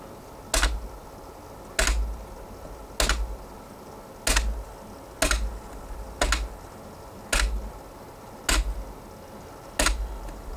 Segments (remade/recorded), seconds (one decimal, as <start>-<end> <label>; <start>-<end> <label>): 0.0-10.6 recorded